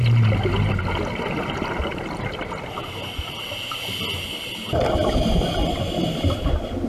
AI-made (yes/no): no